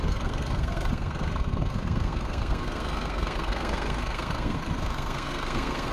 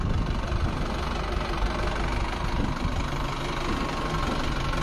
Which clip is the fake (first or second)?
first